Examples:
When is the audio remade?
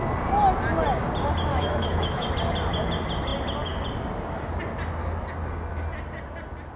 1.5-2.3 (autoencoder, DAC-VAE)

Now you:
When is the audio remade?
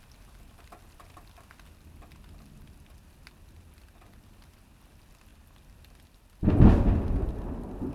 none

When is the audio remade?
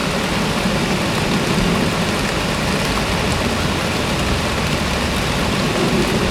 none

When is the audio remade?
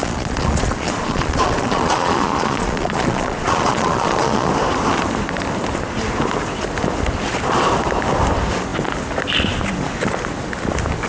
0.0-4.5 (vocoder, Vocos)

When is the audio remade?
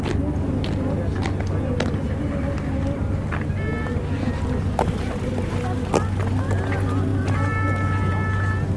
none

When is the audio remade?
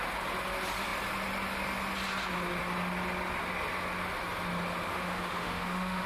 4.9-6.1 (autoencoder, DAC-VAE)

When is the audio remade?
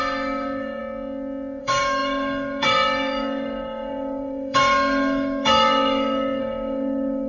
0.0-0.8 (codec, DAC); 1.6-7.3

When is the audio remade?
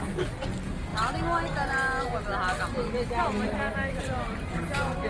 none